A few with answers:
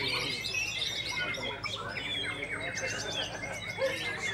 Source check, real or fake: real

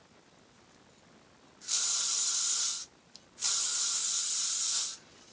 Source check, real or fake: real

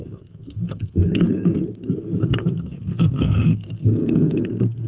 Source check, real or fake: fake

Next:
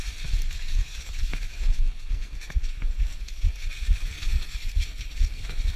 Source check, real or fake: fake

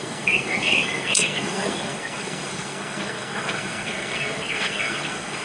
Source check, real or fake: fake